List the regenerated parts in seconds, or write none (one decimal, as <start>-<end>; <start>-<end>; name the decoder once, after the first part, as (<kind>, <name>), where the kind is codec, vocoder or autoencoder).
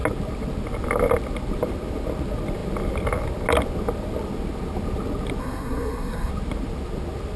5.4-6.3 (codec, SNAC)